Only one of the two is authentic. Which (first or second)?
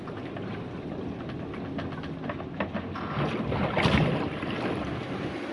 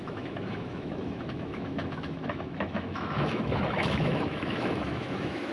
first